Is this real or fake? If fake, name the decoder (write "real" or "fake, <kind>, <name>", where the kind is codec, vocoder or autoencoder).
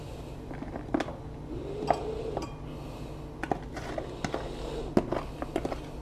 real